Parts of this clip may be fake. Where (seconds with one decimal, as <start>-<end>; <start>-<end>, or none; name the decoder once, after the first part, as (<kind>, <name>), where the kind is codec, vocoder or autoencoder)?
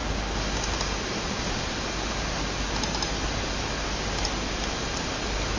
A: none